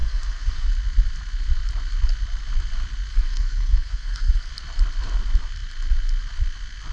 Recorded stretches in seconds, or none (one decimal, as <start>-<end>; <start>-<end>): 0.7-3.1; 4.5-6.9